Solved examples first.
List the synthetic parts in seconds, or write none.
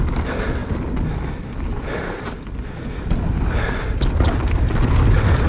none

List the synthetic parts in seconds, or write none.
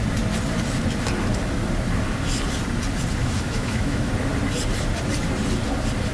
3.2-4.1 (autoencoder, DAC-VAE)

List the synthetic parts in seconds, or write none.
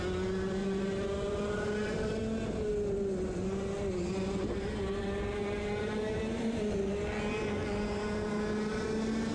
0.6-2.2 (vocoder, BigVGAN v2); 5.4-6.8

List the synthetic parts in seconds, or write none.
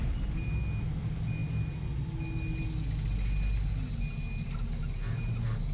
none